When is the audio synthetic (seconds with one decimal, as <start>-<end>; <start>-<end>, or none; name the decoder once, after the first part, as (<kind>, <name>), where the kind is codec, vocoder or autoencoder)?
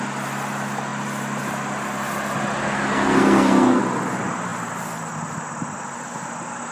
2.6-3.8 (codec, SNAC)